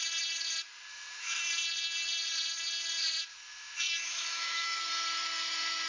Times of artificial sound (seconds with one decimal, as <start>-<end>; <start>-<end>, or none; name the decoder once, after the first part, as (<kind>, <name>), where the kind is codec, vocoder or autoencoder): 0.9-1.4 (autoencoder, DAC-VAE); 3.3-4.8